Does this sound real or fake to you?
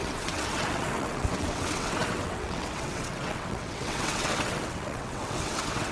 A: fake